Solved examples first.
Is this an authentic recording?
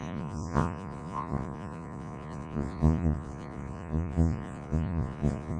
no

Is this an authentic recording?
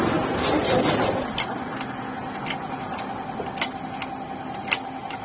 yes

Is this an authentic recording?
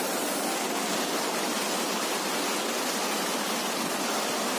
yes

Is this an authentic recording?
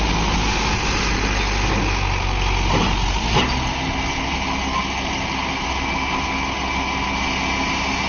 yes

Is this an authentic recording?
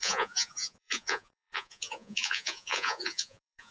no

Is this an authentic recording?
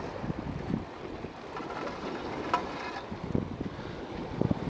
yes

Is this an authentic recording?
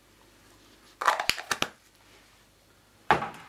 yes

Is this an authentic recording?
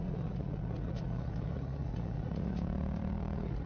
no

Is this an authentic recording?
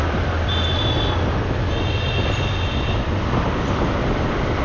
yes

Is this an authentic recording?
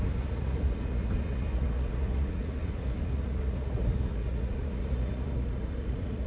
no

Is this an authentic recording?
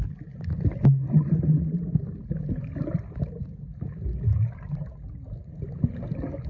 yes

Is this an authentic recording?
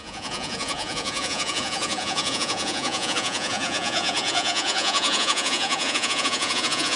no